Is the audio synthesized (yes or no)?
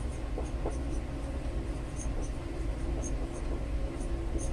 yes